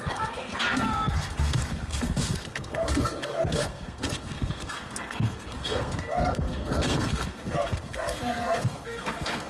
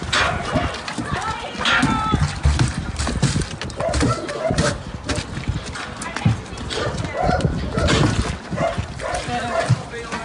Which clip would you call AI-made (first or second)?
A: first